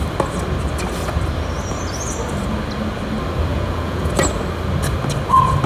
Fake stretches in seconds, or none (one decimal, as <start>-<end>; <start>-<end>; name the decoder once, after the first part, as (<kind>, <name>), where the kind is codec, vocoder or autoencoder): 3.5-4.1 (vocoder, Vocos)